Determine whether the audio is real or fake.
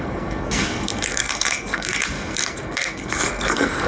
fake